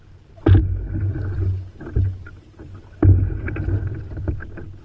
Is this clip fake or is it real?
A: real